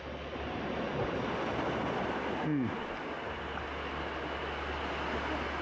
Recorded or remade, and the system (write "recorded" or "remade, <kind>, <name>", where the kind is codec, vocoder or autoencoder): recorded